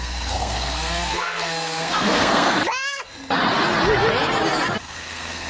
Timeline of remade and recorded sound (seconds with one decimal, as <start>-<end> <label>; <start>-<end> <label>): 0.0-2.6 remade; 2.6-4.8 recorded; 4.8-5.5 remade